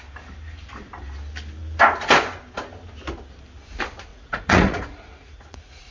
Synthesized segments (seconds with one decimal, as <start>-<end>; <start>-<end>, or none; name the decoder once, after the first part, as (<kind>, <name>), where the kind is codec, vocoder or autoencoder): 4.1-5.9 (vocoder, Vocos)